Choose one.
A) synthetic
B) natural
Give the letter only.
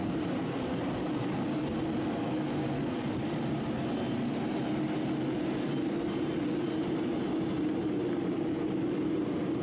B